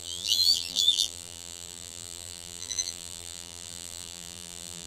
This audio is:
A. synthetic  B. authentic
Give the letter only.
A